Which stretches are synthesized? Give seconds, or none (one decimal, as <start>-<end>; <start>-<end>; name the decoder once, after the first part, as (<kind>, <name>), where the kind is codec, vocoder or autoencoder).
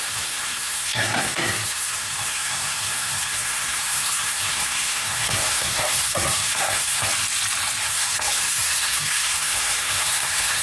0.0-7.1 (codec, SNAC); 7.8-10.6